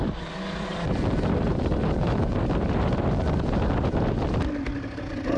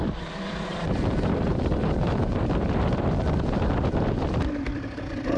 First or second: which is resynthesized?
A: second